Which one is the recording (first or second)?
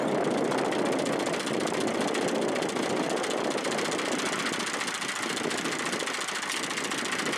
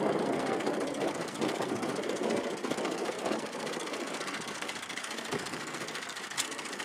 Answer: first